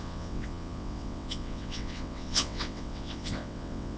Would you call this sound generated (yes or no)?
yes